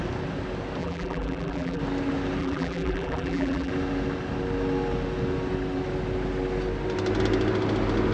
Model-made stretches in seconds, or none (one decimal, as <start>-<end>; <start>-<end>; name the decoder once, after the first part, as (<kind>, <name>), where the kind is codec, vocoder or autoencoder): 0.8-1.8 (vocoder, BigVGAN v2); 2.4-3.7